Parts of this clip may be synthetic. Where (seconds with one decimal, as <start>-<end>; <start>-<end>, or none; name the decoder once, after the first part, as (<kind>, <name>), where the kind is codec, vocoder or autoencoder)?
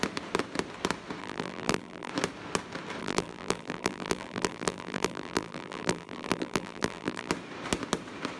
1.2-2.1 (vocoder, BigVGAN v2); 3.0-7.3